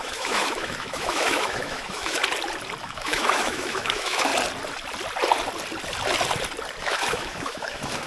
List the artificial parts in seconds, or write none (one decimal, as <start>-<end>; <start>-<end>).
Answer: 0.0-2.2; 2.8-4.3; 6.8-8.1